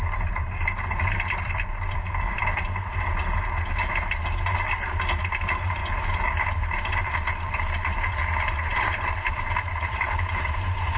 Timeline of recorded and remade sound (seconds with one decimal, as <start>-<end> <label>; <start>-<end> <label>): 0.0-3.1 remade; 3.1-5.2 recorded; 5.2-5.8 remade; 5.8-6.6 recorded; 6.6-11.0 remade